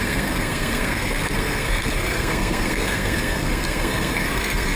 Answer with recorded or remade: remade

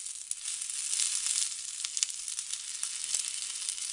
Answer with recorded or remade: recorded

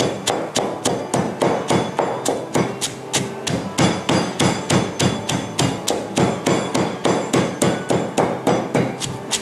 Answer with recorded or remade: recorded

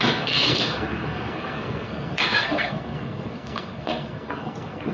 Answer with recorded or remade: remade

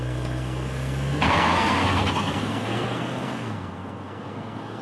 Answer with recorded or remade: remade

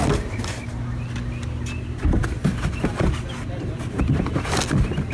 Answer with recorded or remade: recorded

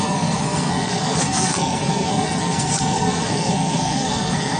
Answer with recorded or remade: remade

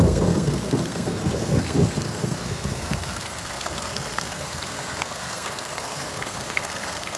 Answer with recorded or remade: remade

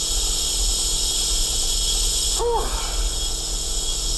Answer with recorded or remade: recorded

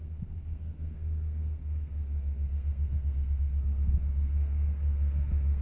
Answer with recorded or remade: remade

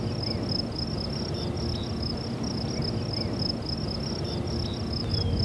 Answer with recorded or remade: recorded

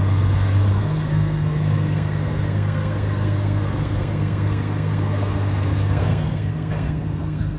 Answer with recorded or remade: remade